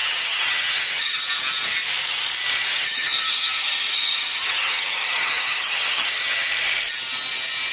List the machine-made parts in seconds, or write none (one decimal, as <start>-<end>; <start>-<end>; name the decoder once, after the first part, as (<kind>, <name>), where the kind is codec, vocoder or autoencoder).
0.0-1.2 (vocoder, HiFi-GAN); 2.7-6.5